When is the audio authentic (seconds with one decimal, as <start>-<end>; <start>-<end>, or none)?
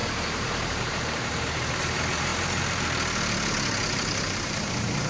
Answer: 2.3-3.9